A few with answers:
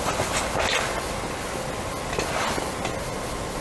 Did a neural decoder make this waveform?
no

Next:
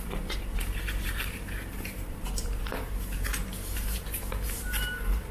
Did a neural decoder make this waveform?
yes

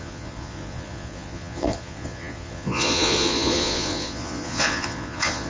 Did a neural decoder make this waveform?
yes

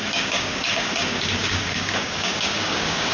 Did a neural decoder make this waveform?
yes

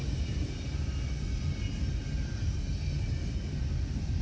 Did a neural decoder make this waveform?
no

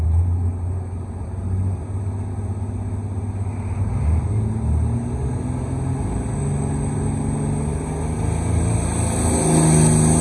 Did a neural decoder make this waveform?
no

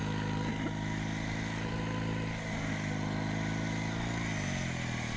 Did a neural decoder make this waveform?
no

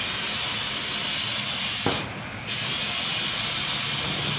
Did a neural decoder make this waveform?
no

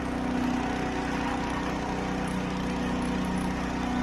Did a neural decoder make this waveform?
no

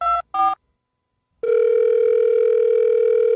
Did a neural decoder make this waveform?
no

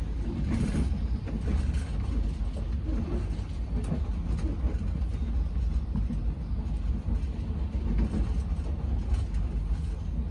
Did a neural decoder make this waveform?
no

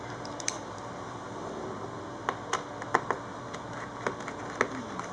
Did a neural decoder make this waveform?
no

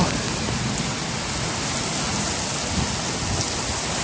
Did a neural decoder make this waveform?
no